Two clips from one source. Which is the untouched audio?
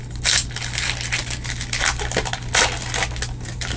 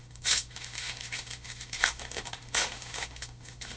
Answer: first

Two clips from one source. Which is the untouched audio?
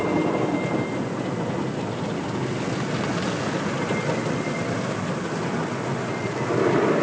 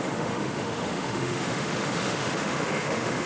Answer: first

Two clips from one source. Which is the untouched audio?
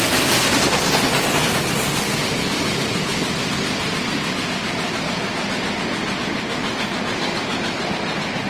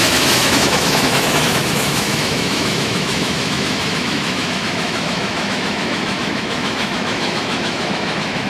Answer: first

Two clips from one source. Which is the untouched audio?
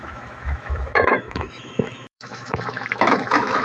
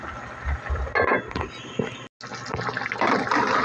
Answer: second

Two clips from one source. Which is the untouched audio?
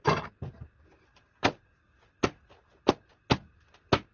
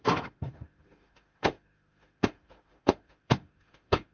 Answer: first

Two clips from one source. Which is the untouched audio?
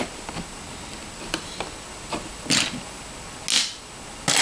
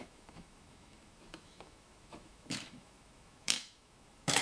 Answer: first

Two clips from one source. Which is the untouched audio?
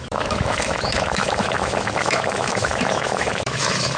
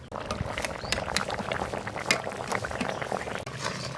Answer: second